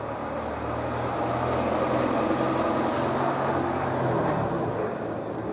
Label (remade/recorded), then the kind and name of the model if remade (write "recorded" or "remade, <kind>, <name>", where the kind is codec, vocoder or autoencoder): recorded